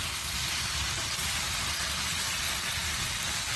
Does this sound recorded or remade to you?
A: recorded